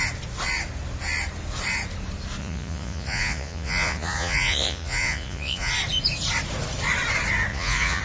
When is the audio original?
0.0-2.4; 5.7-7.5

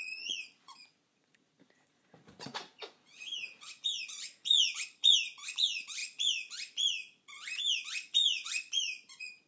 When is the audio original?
none

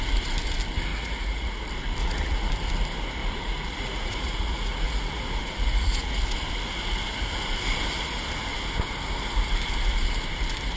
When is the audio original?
0.0-0.9; 1.6-2.0; 2.5-3.2; 6.2-10.8